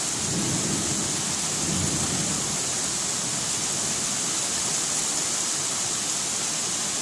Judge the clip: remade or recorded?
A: recorded